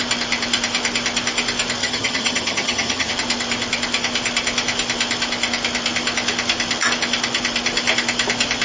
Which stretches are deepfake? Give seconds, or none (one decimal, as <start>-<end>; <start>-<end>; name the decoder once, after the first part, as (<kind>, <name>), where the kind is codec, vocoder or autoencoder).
1.8-3.1 (vocoder, HiFi-GAN)